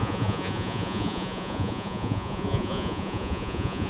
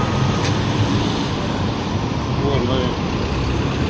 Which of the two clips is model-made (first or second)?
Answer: first